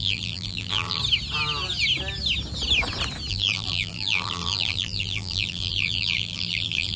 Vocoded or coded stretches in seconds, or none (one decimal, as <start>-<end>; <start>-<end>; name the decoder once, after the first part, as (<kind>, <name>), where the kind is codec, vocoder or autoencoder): 0.0-1.0 (vocoder, BigVGAN v2); 3.3-7.0